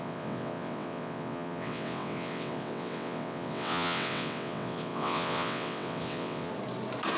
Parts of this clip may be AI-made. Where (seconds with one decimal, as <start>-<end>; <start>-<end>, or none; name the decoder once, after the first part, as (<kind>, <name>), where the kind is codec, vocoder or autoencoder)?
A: 0.0-6.5 (vocoder, WaveNeXt)